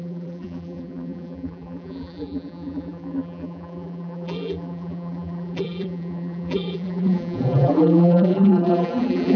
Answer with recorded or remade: remade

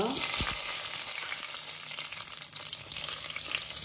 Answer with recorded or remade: recorded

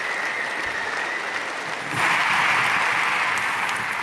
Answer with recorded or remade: recorded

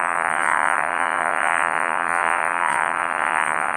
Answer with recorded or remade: remade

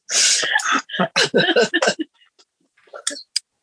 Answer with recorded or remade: recorded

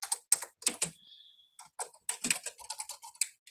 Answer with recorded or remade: recorded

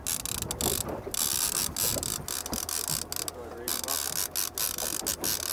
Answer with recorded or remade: recorded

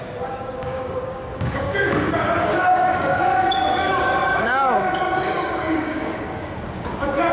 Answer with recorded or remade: remade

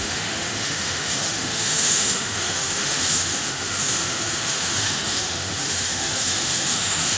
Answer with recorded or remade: remade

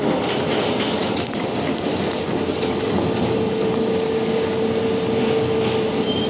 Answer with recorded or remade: recorded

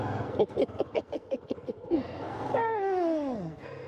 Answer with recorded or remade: remade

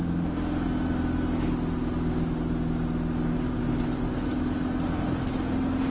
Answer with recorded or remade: recorded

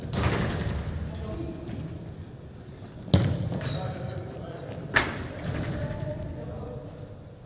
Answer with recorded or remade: recorded